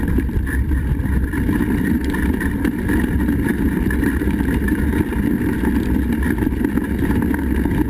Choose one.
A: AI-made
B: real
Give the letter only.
A